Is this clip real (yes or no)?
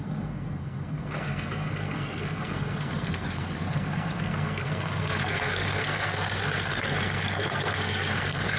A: no